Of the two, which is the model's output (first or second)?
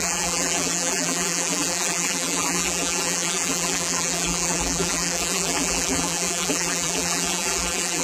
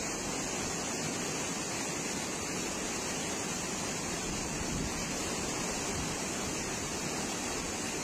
first